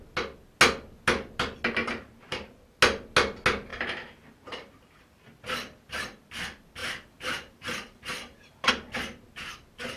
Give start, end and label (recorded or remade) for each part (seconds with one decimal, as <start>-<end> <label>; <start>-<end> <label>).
0.0-1.8 recorded; 1.8-2.8 remade; 2.8-3.7 recorded; 3.7-5.1 remade; 5.1-6.8 recorded; 6.8-8.7 remade; 8.7-10.0 recorded